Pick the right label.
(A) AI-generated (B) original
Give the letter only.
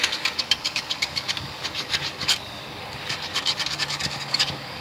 A